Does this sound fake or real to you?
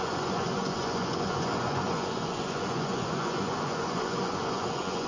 fake